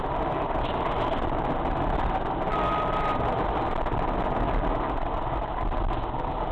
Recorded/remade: recorded